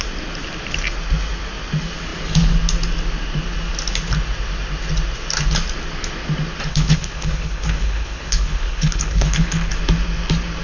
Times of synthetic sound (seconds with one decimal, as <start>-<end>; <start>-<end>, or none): 6.7-9.7